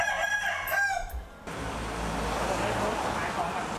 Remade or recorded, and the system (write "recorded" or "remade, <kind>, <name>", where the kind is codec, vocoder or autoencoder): recorded